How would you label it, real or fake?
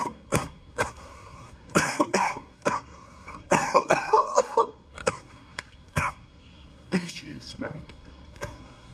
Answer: fake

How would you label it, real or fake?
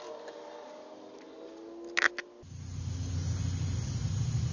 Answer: real